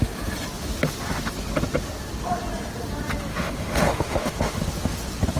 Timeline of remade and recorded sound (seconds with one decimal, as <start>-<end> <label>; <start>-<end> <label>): 0.0-3.3 recorded; 3.3-4.6 remade; 4.6-5.4 recorded